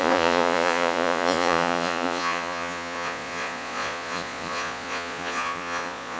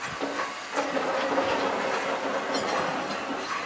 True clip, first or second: second